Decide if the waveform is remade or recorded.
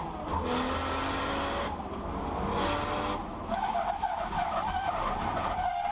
recorded